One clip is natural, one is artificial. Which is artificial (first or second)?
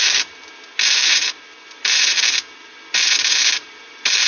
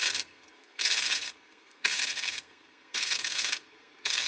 second